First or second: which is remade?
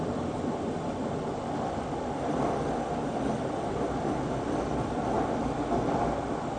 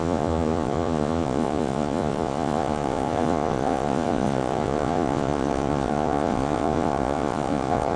second